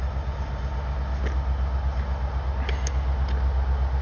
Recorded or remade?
recorded